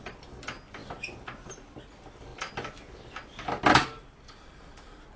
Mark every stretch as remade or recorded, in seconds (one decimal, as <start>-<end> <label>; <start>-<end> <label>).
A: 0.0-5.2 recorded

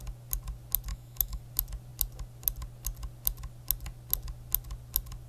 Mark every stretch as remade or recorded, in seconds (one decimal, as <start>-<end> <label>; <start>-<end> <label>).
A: 0.0-0.9 recorded; 0.9-1.4 remade; 1.4-5.3 recorded

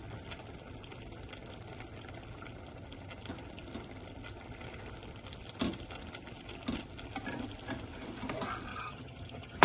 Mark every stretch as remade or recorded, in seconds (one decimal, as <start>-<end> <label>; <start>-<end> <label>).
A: 0.0-8.7 recorded; 8.7-9.6 remade